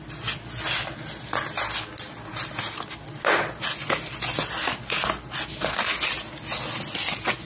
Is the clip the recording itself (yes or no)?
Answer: yes